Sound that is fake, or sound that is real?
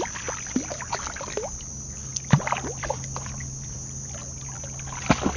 real